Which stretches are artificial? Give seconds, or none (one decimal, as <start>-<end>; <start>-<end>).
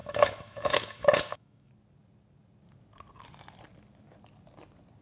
0.0-1.7